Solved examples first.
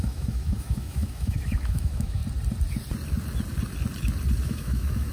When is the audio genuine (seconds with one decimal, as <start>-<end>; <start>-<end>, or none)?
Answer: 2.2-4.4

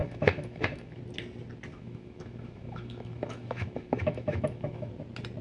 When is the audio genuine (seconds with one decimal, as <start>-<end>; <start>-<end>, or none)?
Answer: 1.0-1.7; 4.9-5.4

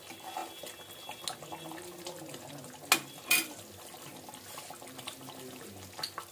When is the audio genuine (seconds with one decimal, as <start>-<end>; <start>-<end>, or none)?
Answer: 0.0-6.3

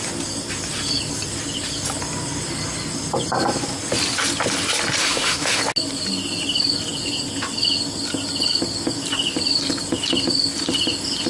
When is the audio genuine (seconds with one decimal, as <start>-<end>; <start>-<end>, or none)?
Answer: 0.0-5.0; 5.6-11.3

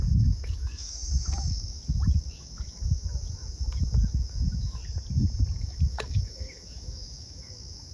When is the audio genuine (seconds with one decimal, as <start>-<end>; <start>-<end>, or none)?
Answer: 4.8-5.6